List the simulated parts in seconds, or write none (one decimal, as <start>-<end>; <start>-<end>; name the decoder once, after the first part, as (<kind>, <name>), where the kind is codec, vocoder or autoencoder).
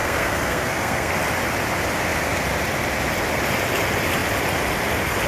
0.0-1.1 (codec, SNAC)